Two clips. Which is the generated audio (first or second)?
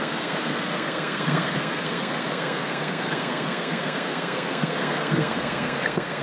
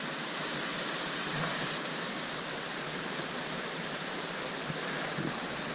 first